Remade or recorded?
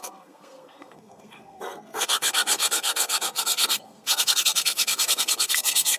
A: remade